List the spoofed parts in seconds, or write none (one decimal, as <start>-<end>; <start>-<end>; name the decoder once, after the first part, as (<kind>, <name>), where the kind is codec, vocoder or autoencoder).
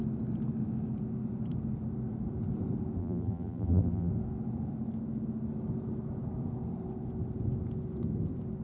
3.0-4.1 (vocoder, BigVGAN v2)